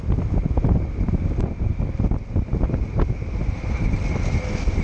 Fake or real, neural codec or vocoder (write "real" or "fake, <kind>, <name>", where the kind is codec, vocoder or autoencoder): real